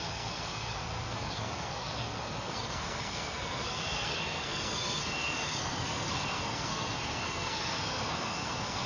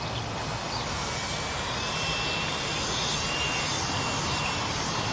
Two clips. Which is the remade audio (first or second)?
first